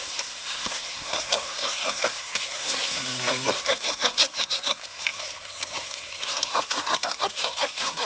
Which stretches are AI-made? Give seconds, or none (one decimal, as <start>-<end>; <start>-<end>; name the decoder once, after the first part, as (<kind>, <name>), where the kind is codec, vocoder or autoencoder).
0.0-8.1 (codec, SNAC)